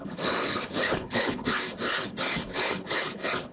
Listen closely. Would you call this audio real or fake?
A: fake